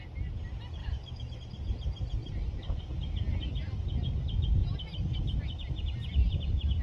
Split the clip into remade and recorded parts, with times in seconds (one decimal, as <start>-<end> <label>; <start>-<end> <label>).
0.0-0.8 recorded; 0.8-1.4 remade; 1.4-6.8 recorded